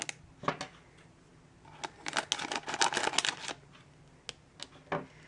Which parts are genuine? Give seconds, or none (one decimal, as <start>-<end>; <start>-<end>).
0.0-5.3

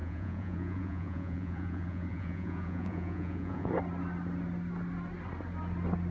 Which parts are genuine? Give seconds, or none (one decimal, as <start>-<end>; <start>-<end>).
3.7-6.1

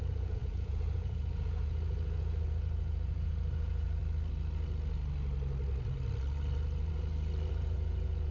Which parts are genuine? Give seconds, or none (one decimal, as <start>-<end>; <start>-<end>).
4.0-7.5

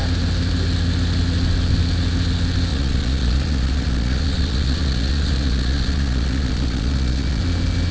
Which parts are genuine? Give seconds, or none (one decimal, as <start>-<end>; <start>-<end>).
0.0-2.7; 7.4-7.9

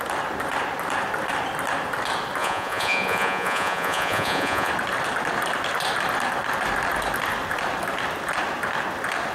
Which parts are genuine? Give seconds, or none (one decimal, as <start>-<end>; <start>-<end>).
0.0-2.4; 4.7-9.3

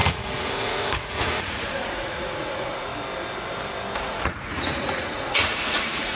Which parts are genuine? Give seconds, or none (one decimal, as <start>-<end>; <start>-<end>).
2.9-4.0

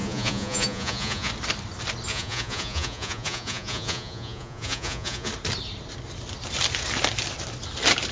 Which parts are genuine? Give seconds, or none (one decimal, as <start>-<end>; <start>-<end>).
1.3-2.1; 5.3-8.1